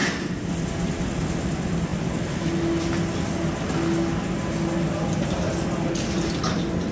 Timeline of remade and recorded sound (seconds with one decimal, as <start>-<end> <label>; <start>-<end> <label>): 0.0-6.9 recorded